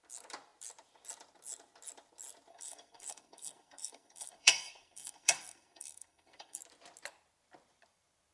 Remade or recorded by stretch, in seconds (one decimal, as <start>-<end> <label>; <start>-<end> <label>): 0.0-2.5 recorded; 2.5-6.6 remade; 6.6-8.3 recorded